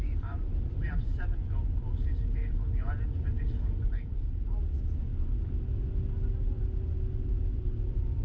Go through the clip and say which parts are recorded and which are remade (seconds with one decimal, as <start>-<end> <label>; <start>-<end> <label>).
0.0-5.1 remade; 5.1-7.2 recorded; 7.2-8.2 remade